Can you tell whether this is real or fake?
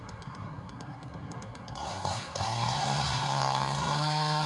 fake